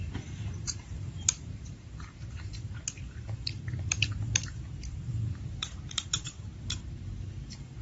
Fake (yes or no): yes